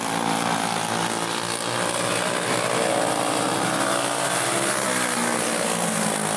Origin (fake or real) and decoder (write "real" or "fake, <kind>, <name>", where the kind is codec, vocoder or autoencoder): real